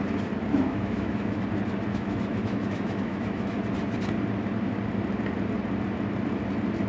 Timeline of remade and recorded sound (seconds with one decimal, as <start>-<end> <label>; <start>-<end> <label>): 0.0-0.5 recorded; 0.5-1.4 remade; 1.4-1.9 recorded; 1.9-3.6 remade; 3.6-6.9 recorded